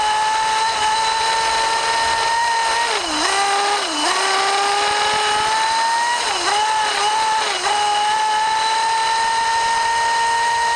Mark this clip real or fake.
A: real